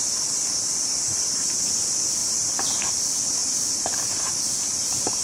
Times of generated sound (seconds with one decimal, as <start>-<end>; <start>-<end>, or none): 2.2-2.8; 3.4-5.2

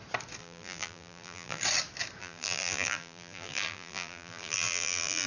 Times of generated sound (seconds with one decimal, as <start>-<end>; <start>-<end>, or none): 0.4-1.6; 2.2-5.3

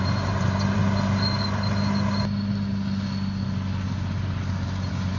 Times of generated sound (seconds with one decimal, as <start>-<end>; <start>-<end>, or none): 0.0-0.8; 3.9-5.2

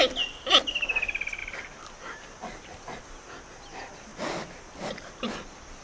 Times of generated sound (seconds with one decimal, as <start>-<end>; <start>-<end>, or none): 1.4-3.0

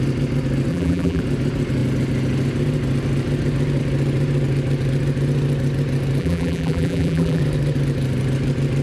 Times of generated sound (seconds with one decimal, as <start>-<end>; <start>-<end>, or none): 0.7-1.2; 6.2-7.4

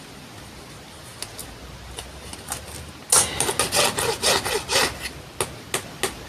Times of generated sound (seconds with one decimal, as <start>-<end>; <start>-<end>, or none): none